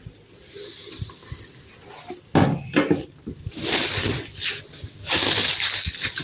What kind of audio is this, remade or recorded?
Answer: recorded